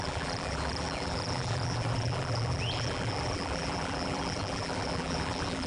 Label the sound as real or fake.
fake